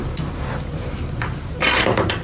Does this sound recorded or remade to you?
remade